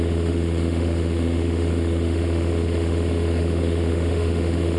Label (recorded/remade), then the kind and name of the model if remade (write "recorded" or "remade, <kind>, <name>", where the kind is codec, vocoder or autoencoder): remade, autoencoder, DAC-VAE